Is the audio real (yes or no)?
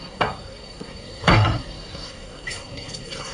no